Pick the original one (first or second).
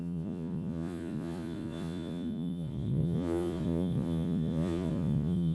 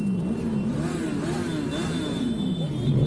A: second